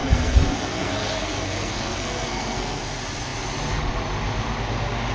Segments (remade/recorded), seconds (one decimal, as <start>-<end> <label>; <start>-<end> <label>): 0.0-2.8 remade; 2.8-5.1 recorded

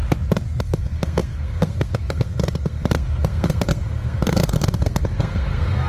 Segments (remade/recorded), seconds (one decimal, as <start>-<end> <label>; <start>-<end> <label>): 0.0-0.6 recorded; 0.6-5.9 remade

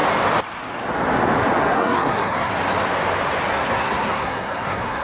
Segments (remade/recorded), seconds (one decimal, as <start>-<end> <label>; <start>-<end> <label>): 0.0-1.6 recorded; 1.6-2.5 remade; 2.5-3.5 recorded; 3.5-5.0 remade

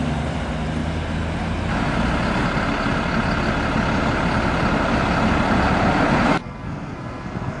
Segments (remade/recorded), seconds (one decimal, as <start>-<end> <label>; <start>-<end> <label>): 0.0-6.3 recorded; 6.3-7.6 remade

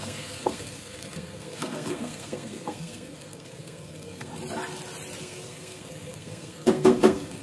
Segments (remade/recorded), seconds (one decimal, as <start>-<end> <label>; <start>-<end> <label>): 0.0-4.3 remade; 4.3-5.2 recorded; 5.2-7.4 remade

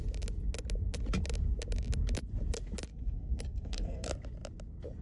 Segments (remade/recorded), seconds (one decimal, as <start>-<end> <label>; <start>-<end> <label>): 0.0-2.9 recorded; 2.9-4.1 remade; 4.1-5.0 recorded